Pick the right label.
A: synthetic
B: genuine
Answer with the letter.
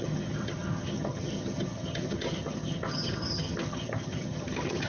A